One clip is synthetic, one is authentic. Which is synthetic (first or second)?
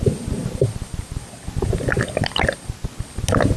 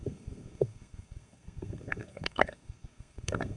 second